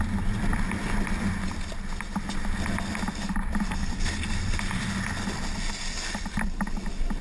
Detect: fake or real real